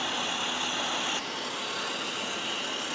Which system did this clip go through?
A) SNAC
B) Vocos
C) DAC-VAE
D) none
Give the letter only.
D